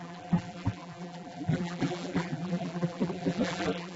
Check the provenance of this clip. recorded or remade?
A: remade